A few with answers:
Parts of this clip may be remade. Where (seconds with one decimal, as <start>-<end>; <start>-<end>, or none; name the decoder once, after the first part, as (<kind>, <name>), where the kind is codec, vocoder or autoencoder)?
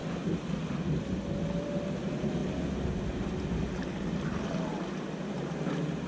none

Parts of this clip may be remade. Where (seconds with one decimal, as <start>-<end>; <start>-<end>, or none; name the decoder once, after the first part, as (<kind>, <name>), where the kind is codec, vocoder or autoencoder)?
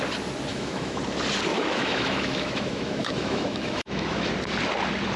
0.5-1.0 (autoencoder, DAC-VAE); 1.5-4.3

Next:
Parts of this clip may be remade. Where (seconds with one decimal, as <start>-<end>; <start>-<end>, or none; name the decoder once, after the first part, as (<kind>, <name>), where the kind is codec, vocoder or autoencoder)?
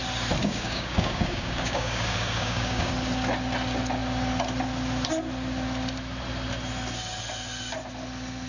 0.4-2.9 (codec, DAC)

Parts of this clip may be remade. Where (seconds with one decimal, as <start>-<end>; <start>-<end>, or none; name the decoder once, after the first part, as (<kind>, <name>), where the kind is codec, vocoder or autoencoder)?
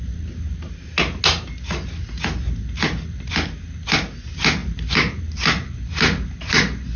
none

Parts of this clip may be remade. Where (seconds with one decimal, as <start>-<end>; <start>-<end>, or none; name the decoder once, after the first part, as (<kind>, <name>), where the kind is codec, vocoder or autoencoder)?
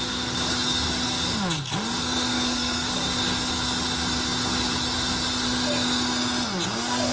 2.0-2.9 (codec, SNAC)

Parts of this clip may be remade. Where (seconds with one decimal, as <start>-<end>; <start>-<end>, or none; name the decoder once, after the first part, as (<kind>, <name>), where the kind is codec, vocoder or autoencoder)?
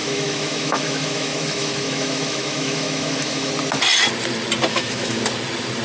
0.0-3.5 (autoencoder, DAC-VAE); 4.7-5.2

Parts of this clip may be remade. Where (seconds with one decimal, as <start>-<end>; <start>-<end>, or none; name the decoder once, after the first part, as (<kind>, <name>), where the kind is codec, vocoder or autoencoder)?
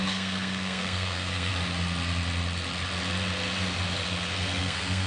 0.0-1.5 (codec, SNAC); 4.6-5.1